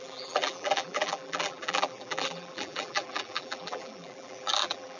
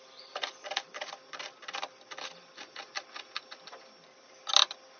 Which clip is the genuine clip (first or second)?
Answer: second